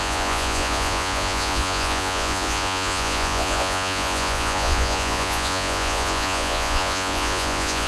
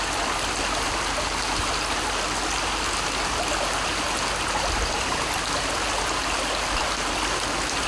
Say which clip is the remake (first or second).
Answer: first